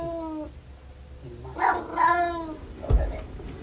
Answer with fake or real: real